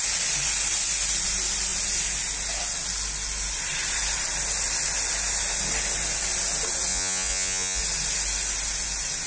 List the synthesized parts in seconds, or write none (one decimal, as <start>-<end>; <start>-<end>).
6.9-7.8